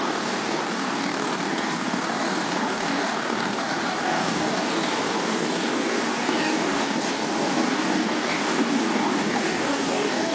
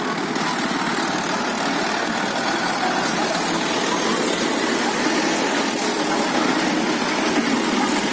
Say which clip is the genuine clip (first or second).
second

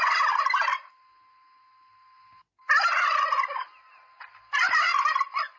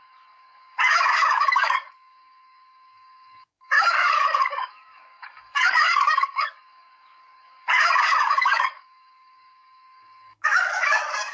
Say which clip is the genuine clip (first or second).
first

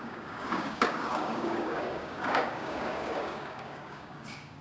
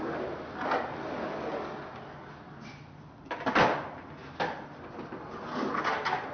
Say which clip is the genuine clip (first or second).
second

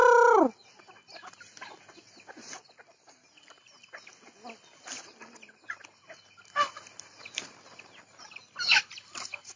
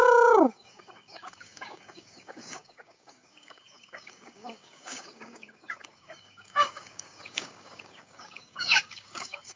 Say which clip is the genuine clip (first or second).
first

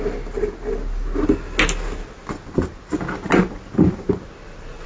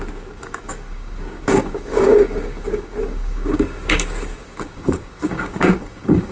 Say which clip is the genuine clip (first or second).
first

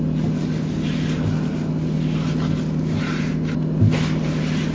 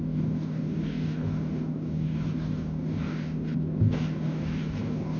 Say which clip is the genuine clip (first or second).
first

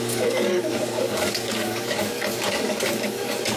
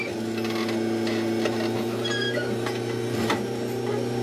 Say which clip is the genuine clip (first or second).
second